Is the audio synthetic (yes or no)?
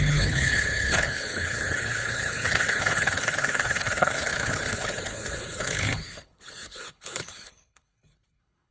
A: yes